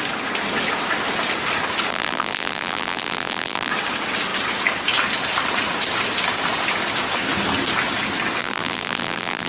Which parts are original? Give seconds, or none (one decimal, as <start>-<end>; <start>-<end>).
0.0-1.9; 3.7-8.4